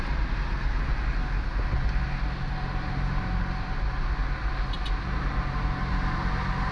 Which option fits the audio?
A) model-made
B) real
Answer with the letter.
B